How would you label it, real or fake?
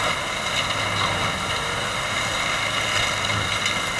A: real